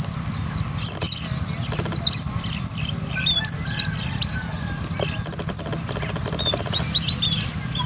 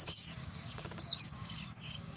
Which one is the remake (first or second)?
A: second